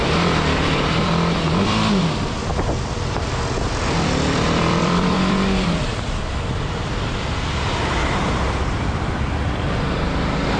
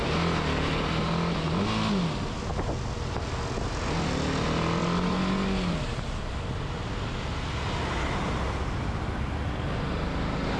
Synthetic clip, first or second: first